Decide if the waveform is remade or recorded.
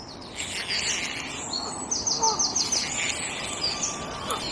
recorded